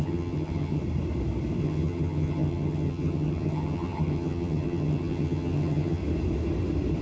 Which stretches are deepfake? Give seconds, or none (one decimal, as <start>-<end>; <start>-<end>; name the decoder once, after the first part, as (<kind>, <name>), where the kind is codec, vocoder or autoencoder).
0.0-0.8 (vocoder, HiFi-GAN); 1.6-6.0